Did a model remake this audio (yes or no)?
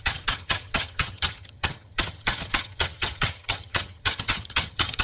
yes